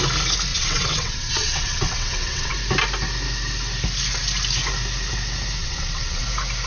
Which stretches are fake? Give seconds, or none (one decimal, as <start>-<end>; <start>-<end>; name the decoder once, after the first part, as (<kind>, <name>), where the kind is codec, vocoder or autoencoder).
0.5-2.5 (vocoder, WaveNeXt); 5.6-6.2